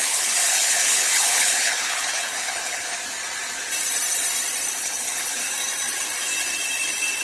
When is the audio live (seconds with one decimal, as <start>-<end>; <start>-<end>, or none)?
2.9-4.7; 5.4-7.2